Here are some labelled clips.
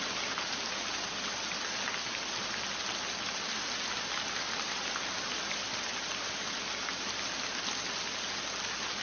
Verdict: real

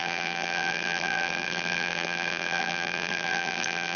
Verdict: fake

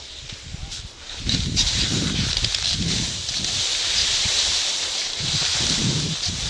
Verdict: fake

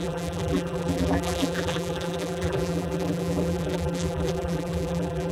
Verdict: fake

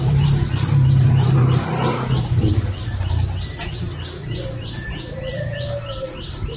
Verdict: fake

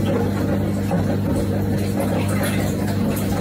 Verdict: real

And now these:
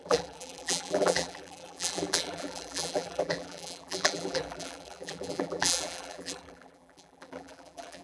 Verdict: fake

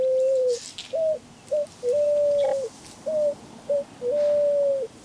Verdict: real